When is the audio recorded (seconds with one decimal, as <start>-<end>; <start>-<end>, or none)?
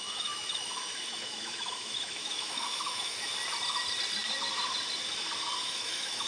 3.3-5.6